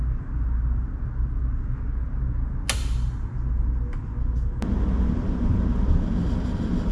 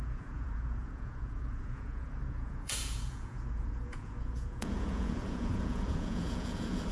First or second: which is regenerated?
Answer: second